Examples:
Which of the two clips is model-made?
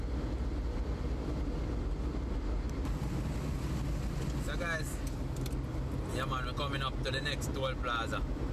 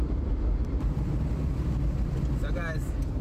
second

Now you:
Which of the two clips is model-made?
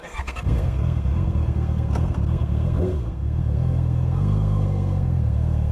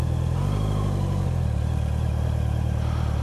first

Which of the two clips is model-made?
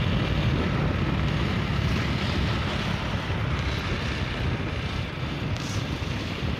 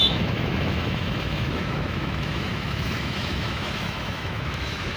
second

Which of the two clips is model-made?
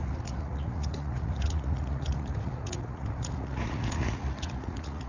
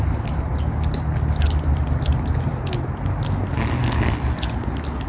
first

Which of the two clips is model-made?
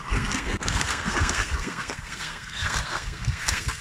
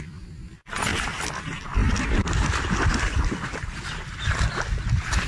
first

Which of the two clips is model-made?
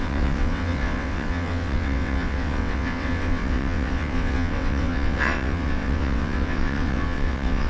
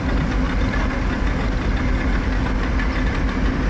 first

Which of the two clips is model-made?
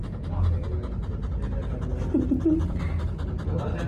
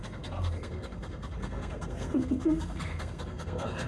second